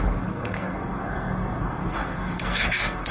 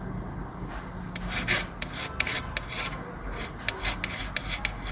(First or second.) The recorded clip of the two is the second